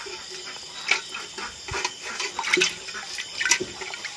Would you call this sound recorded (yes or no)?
yes